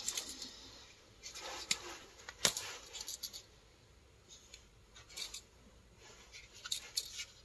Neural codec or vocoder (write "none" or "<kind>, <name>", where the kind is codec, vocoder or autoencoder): none